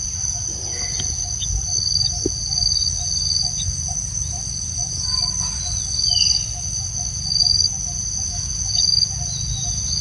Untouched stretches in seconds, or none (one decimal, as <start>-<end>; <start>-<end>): 0.0-10.0